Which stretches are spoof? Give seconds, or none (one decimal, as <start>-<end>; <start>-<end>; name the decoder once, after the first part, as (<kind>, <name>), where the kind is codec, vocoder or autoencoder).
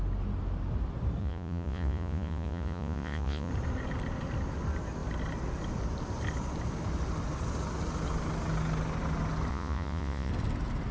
1.2-3.5 (vocoder, Vocos); 9.5-10.3